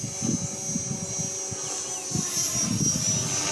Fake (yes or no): no